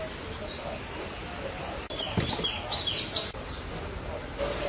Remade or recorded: recorded